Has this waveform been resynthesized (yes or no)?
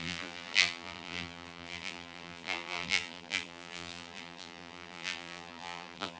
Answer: yes